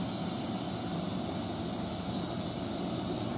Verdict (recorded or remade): recorded